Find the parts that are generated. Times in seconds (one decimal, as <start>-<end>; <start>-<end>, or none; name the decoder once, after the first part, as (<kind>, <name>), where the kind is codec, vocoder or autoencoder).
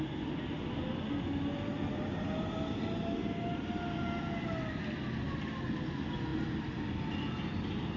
none